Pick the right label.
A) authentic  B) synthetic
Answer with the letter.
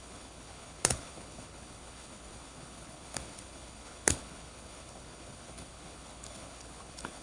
B